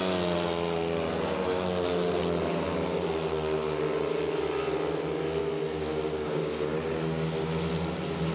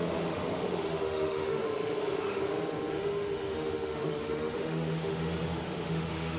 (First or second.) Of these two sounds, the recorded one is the first